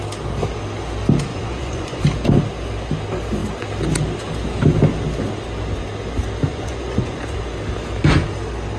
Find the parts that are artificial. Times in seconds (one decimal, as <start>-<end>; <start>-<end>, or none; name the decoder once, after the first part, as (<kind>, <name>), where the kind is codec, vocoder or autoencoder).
1.3-2.0 (vocoder, Vocos); 6.5-7.4